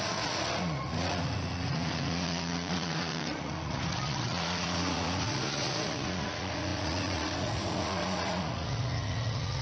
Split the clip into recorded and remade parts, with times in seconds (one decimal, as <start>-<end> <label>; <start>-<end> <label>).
0.0-9.6 remade